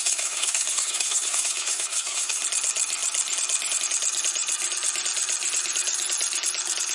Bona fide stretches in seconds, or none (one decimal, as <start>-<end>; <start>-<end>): 2.4-6.9